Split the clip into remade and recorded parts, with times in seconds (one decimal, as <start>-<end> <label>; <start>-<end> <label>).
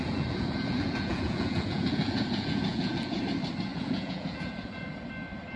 0.0-3.2 remade; 3.2-3.7 recorded; 3.7-5.0 remade; 5.0-5.6 recorded